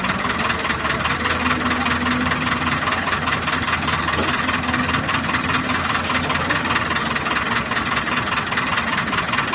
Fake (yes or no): no